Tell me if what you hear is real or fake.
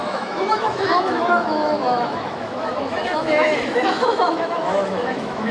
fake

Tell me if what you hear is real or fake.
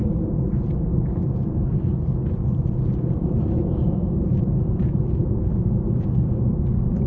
real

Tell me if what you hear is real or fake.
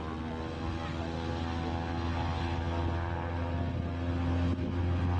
real